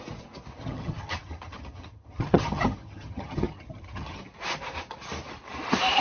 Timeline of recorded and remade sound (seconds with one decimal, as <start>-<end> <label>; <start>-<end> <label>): 0.0-0.6 recorded; 0.6-4.2 remade; 4.2-6.0 recorded